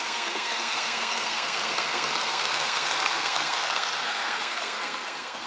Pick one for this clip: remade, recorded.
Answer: remade